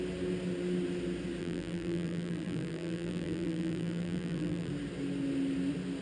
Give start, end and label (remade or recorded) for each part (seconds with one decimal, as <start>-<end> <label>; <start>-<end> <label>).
0.0-1.4 recorded; 1.4-4.7 remade; 4.7-6.0 recorded